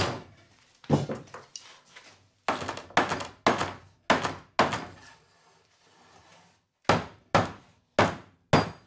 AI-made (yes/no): no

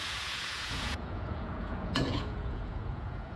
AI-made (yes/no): yes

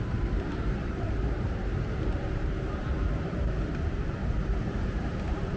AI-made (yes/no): yes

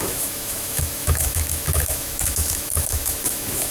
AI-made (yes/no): yes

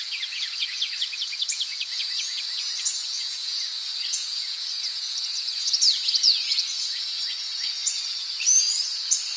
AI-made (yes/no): yes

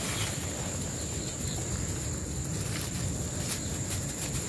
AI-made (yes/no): no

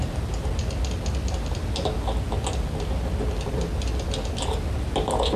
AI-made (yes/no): no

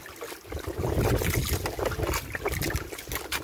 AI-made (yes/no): no